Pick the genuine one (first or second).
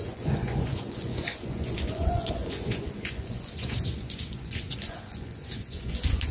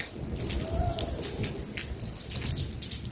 second